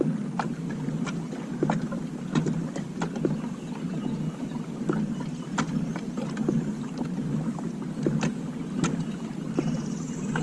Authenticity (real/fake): real